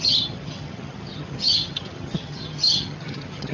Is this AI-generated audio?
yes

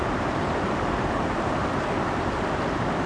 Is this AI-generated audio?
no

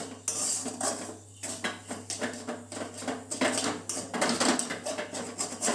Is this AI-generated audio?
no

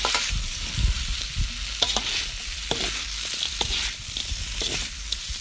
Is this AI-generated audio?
no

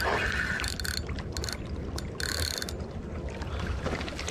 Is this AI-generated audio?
no